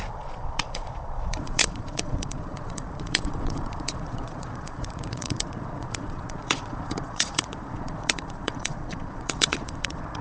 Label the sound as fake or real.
fake